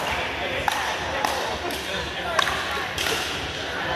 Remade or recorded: recorded